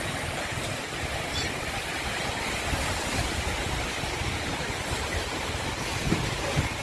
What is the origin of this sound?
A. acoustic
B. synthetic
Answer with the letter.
A